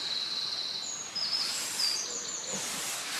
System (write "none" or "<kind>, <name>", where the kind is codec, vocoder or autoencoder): none